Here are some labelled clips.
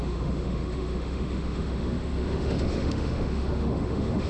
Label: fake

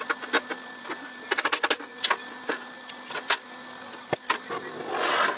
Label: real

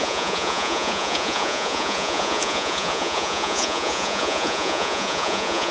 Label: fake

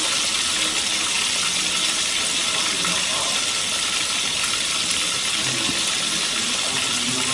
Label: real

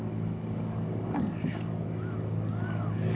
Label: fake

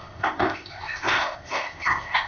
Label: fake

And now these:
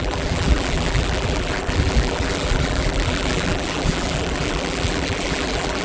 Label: fake